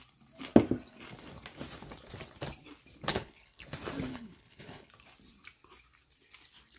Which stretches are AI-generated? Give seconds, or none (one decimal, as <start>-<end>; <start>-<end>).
3.1-3.6; 4.1-4.9